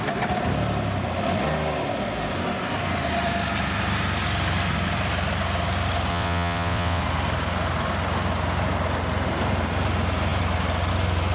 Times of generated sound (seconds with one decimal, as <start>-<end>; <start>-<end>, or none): 6.1-7.0